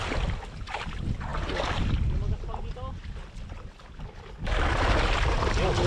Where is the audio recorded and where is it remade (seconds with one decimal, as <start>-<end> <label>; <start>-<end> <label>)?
0.0-5.9 recorded